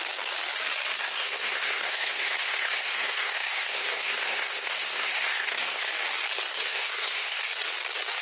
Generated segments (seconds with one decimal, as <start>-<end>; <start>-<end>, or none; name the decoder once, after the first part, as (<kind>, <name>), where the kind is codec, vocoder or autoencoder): 1.0-5.9 (codec, SNAC); 6.5-7.4